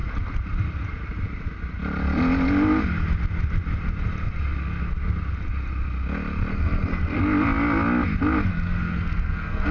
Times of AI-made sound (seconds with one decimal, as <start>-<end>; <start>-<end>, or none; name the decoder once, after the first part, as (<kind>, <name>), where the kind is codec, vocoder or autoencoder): 6.5-7.2 (codec, SNAC); 8.5-9.7